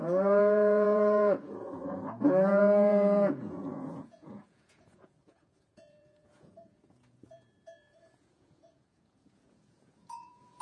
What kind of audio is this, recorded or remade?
remade